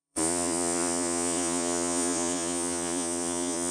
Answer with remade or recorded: remade